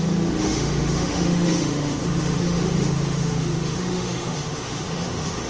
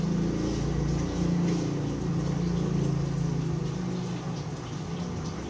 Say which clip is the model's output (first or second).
first